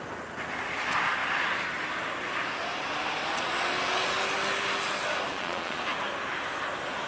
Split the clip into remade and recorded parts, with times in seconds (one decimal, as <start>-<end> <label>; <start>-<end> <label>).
0.0-5.3 recorded; 5.3-5.8 remade; 5.8-7.1 recorded